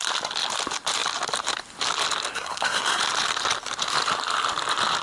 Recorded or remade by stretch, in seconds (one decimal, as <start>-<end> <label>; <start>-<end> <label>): 0.0-2.3 recorded; 2.3-3.0 remade; 3.0-5.0 recorded